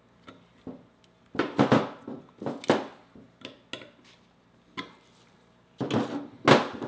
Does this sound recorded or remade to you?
recorded